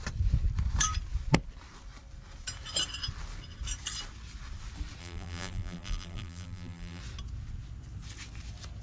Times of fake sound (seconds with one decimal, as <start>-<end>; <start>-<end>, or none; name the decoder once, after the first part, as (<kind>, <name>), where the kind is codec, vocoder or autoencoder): 5.0-7.0 (vocoder, BigVGAN v2)